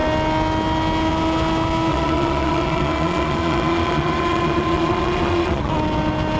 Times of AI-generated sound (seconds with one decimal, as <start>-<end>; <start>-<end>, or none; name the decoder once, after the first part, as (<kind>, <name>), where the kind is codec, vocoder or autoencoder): 1.9-5.7 (vocoder, Vocos)